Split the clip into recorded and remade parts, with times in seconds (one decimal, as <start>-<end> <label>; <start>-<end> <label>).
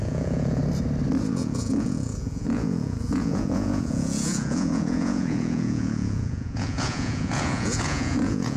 0.0-0.6 remade; 0.6-1.3 recorded; 1.3-8.6 remade